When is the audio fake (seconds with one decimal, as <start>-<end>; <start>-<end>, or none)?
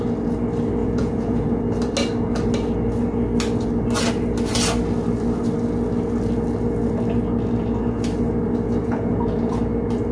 0.8-1.6; 8.8-9.6